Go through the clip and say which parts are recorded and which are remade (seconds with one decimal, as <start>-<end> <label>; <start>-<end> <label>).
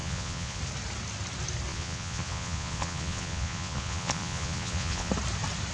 0.0-0.6 remade; 0.6-1.7 recorded; 1.7-5.1 remade; 5.1-5.7 recorded